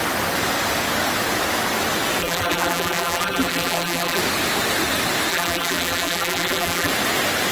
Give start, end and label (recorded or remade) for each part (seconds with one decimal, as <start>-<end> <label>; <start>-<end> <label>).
0.0-2.2 recorded; 2.2-4.2 remade; 4.2-5.3 recorded; 5.3-6.9 remade; 6.9-7.5 recorded